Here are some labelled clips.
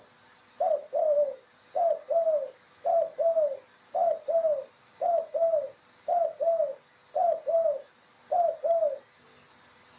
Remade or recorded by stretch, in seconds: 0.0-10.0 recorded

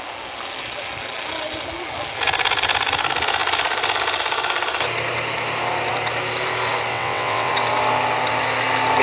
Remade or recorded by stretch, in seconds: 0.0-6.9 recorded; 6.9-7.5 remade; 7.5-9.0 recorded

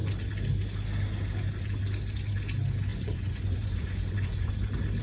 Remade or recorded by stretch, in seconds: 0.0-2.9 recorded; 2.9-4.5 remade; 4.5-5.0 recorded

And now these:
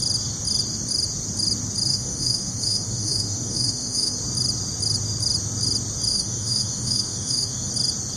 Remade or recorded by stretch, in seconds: 0.0-1.9 recorded; 1.9-4.2 remade; 4.2-6.1 recorded; 6.1-7.7 remade; 7.7-8.2 recorded

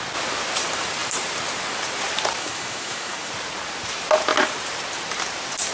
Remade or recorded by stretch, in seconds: 0.0-2.4 recorded; 2.4-3.3 remade; 3.3-5.7 recorded

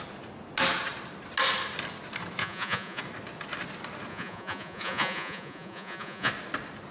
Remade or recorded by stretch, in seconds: 0.0-2.4 recorded; 2.4-3.0 remade; 3.0-4.1 recorded; 4.1-6.3 remade; 6.3-6.9 recorded